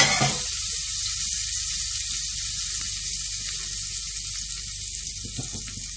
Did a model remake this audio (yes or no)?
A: no